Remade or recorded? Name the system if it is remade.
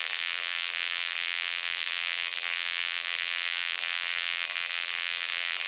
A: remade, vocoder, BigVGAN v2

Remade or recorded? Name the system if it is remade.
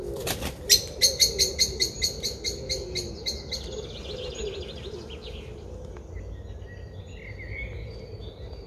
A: recorded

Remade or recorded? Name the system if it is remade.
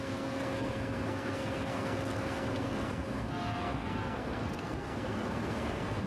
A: remade, codec, SNAC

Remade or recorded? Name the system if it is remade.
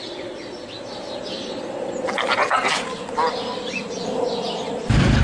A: recorded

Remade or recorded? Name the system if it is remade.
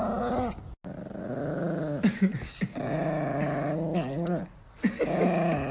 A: recorded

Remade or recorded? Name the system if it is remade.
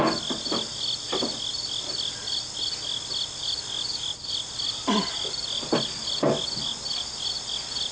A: recorded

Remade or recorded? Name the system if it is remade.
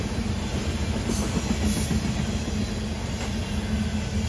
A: recorded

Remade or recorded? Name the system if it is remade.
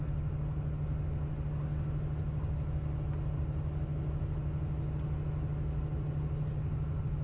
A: recorded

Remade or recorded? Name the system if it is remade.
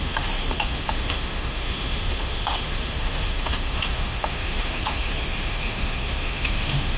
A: remade, autoencoder, DAC-VAE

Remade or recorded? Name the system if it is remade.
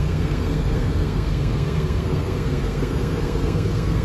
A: remade, codec, SNAC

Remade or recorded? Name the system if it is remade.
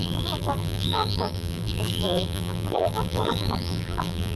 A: remade, vocoder, BigVGAN v2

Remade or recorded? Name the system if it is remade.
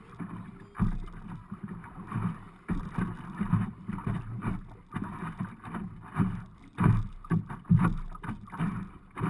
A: recorded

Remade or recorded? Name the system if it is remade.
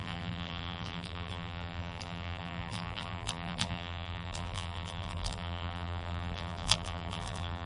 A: remade, vocoder, BigVGAN v2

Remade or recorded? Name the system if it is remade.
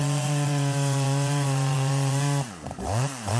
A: remade, vocoder, Vocos